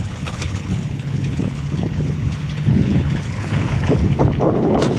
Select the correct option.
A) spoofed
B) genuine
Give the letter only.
A